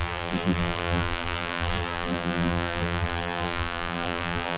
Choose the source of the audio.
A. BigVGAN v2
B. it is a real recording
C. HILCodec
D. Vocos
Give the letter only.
A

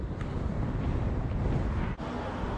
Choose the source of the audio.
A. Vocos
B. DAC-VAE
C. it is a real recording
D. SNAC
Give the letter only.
C